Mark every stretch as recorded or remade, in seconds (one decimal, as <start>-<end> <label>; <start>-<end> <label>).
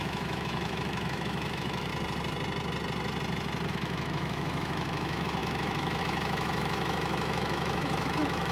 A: 0.0-1.9 remade; 1.9-3.7 recorded; 3.7-8.5 remade